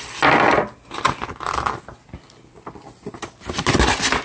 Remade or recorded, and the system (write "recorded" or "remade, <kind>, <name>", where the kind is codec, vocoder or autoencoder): recorded